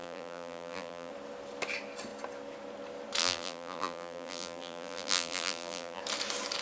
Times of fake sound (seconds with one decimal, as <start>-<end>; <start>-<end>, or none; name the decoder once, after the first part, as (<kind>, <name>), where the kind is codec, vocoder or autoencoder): 0.0-1.1 (vocoder, BigVGAN v2); 3.2-6.0